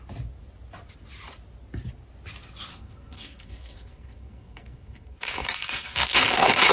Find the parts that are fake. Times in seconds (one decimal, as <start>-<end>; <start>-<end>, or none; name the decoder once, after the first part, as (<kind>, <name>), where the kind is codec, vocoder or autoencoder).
2.7-6.7 (codec, SNAC)